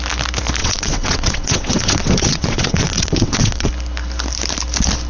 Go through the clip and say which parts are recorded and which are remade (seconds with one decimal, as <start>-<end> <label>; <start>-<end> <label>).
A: 0.0-0.6 recorded; 0.6-3.7 remade; 3.7-5.1 recorded